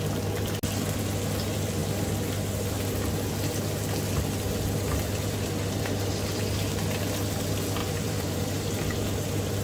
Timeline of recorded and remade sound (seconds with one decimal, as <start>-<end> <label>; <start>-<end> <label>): 0.0-7.8 recorded; 7.8-8.7 remade; 8.7-9.6 recorded